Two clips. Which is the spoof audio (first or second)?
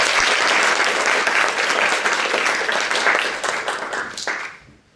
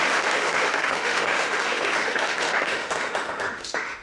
second